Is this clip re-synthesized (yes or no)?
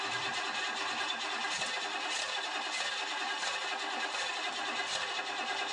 no